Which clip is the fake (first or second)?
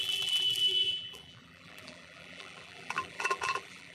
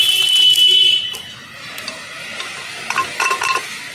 first